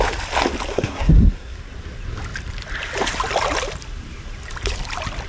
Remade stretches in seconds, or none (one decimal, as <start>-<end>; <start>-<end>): 0.7-1.6